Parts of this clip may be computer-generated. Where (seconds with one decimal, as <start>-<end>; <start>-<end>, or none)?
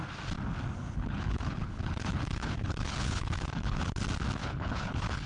0.8-4.0; 4.4-5.3